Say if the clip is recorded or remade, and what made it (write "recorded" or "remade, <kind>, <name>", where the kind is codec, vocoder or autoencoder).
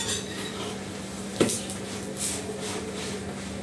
recorded